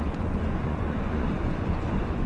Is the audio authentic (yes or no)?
no